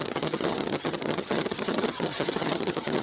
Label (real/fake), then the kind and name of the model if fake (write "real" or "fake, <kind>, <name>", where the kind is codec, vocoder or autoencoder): fake, vocoder, HiFi-GAN